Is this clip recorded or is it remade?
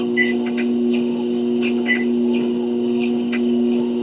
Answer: recorded